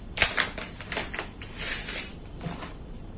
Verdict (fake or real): real